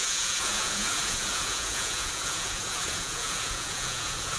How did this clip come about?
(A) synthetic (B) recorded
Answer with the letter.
A